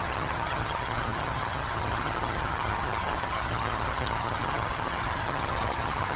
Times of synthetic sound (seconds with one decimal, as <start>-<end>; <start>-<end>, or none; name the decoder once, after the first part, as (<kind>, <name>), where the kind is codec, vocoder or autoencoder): 0.0-6.2 (vocoder, HiFi-GAN)